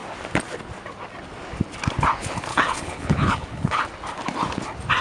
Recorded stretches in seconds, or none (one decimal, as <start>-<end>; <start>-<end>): 0.0-2.5; 3.8-5.0